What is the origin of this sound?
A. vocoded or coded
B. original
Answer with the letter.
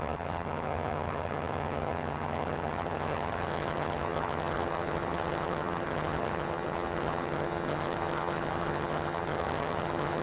A